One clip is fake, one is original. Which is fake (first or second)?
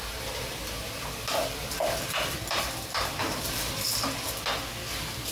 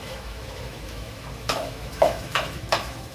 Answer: second